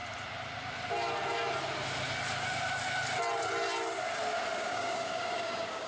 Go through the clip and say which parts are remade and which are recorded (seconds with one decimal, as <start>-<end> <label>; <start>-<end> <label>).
0.0-4.6 recorded; 4.6-5.9 remade